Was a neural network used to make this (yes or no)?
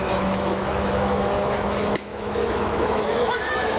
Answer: yes